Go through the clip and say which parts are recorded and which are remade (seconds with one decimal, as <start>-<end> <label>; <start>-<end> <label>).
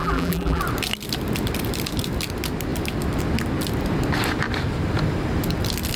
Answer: 0.0-0.6 remade; 0.6-6.0 recorded